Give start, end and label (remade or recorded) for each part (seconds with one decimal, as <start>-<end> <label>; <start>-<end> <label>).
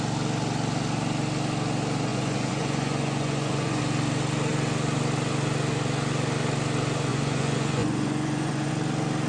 0.0-2.1 recorded; 2.1-3.8 remade; 3.8-7.1 recorded; 7.1-8.7 remade; 8.7-9.3 recorded